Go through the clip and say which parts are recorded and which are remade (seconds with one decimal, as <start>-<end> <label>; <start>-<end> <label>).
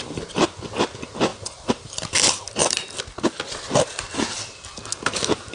0.0-1.3 recorded; 1.3-2.1 remade; 2.1-5.5 recorded